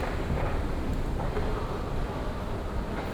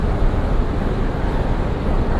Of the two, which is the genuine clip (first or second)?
second